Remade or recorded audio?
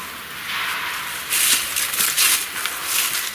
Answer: recorded